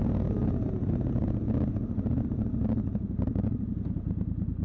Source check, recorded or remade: remade